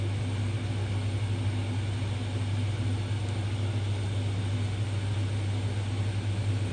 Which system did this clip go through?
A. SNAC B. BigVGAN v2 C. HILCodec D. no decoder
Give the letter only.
D